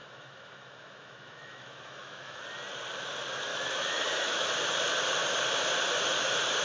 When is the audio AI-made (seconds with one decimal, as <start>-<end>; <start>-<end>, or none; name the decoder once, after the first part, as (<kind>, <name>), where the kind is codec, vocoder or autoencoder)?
0.0-2.4 (autoencoder, DAC-VAE); 3.5-4.5